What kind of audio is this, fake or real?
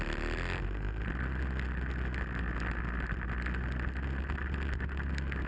real